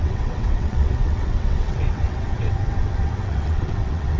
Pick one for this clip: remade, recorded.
remade